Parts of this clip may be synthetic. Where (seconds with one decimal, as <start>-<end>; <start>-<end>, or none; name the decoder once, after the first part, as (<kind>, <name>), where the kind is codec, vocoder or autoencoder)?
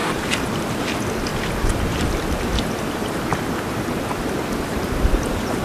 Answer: 0.6-1.3 (vocoder, BigVGAN v2); 2.6-3.3; 4.7-5.6